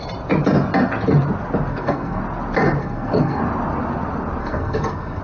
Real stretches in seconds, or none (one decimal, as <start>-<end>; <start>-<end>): 0.0-1.7; 2.2-2.8; 3.4-4.4